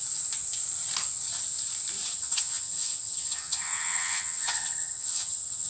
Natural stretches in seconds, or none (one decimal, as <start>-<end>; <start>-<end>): 0.0-2.1